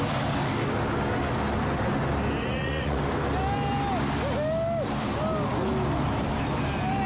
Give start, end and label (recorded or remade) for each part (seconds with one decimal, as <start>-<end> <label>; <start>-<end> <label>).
0.0-2.4 recorded; 2.4-3.0 remade; 3.0-7.1 recorded